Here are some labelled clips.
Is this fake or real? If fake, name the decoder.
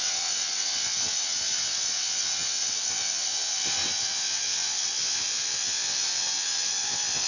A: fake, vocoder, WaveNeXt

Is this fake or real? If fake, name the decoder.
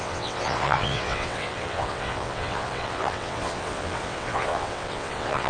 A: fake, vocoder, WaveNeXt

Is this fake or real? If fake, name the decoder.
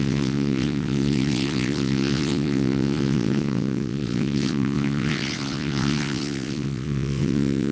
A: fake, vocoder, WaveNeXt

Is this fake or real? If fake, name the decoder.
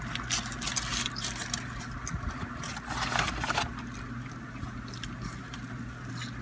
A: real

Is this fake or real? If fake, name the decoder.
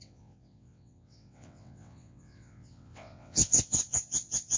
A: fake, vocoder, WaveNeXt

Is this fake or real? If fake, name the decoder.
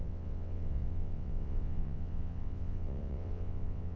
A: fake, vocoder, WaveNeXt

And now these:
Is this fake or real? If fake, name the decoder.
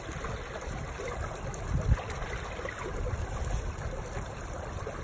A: real